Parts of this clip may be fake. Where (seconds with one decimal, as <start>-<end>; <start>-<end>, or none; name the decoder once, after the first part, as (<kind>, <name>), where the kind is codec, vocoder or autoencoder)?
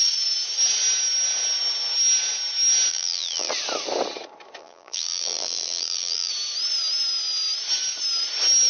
2.9-3.5 (vocoder, BigVGAN v2); 4.6-6.3